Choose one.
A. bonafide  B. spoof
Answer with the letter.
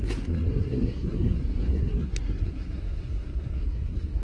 B